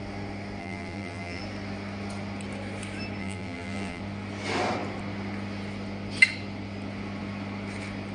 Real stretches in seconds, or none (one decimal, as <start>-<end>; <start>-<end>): 0.0-0.6; 1.4-3.2; 4.0-8.1